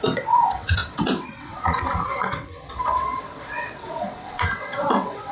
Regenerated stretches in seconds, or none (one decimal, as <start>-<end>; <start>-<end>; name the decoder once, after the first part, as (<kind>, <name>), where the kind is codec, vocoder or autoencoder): 0.0-5.3 (vocoder, WaveNeXt)